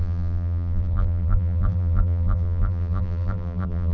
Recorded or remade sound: remade